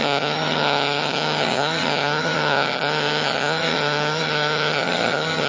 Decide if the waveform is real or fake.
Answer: fake